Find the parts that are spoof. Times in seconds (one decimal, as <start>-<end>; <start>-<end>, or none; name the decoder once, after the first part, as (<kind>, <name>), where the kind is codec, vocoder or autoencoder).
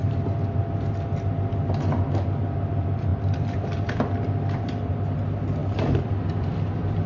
3.1-4.9 (vocoder, BigVGAN v2); 5.6-7.1